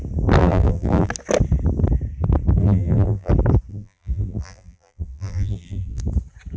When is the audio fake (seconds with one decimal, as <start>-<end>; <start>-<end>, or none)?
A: 0.4-1.1; 2.6-3.3; 3.7-6.0